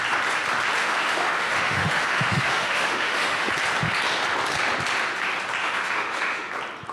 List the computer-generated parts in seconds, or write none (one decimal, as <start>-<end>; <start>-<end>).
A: 0.8-3.5; 5.6-6.5